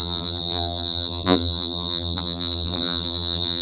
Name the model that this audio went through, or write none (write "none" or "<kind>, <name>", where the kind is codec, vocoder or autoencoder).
vocoder, BigVGAN v2